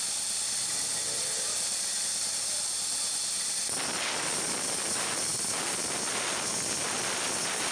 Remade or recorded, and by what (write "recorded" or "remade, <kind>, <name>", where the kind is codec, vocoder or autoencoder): recorded